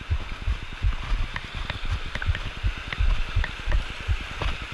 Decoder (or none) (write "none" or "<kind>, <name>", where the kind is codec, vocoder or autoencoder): none